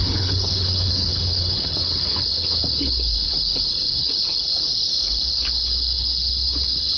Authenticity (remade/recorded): remade